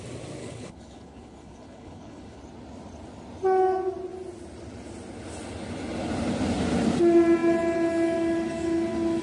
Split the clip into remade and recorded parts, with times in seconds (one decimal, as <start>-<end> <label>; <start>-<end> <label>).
0.0-0.4 recorded; 0.4-2.4 remade; 2.4-9.2 recorded